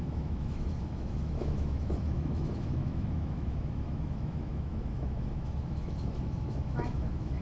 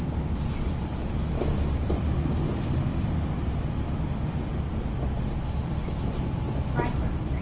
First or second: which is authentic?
second